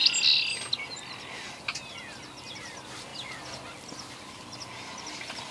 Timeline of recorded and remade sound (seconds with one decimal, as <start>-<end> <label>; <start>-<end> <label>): 0.0-5.5 recorded